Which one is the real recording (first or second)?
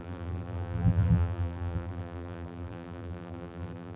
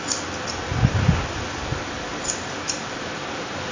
second